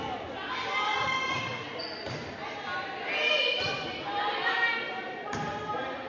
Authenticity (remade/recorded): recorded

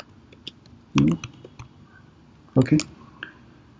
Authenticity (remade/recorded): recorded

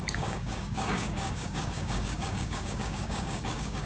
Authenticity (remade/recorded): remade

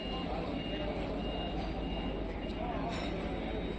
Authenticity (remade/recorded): recorded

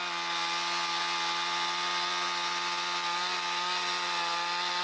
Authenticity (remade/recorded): recorded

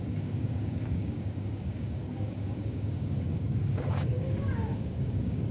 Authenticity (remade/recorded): remade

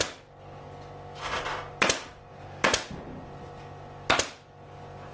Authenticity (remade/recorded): recorded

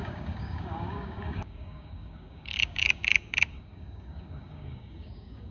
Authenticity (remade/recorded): remade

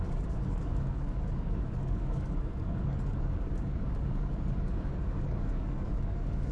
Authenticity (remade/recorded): remade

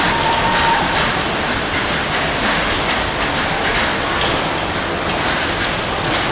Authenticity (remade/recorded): recorded